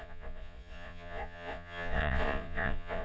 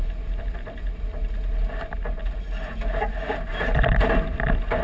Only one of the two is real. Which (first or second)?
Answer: second